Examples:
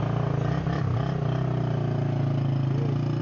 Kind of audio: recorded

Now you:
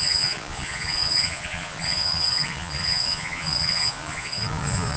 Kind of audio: remade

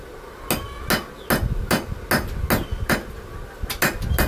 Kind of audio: recorded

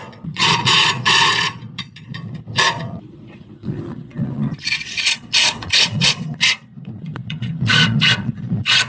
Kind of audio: remade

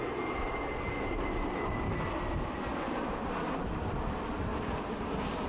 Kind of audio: recorded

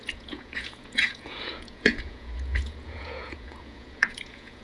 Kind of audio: remade